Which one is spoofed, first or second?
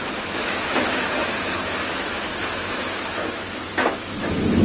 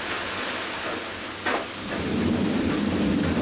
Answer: first